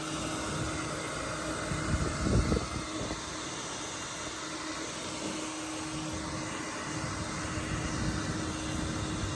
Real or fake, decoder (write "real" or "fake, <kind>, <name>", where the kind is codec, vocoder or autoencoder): real